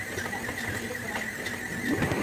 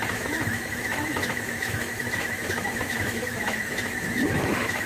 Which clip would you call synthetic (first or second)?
second